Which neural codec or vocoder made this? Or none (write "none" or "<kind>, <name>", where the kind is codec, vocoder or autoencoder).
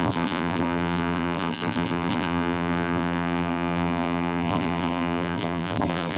vocoder, BigVGAN v2